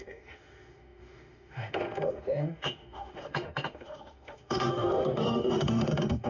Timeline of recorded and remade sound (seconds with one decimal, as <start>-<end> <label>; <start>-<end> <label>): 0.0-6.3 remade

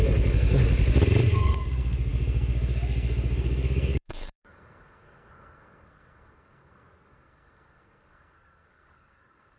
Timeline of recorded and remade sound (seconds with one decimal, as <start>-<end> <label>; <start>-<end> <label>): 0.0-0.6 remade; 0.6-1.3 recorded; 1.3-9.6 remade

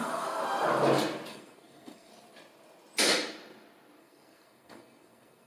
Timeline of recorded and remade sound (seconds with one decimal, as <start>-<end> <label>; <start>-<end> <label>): 0.0-0.4 remade; 0.4-1.3 recorded; 1.3-2.1 remade; 2.1-4.0 recorded; 4.0-5.5 remade

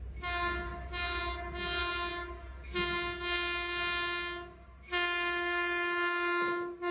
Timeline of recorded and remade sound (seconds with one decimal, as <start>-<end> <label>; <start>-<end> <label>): 0.0-6.9 recorded